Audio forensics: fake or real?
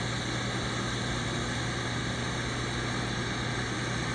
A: real